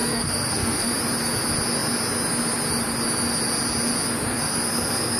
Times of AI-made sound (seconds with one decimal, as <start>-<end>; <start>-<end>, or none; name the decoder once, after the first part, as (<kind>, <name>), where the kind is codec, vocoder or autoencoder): 0.0-0.9 (codec, SNAC); 4.3-5.2